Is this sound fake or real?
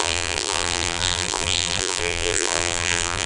fake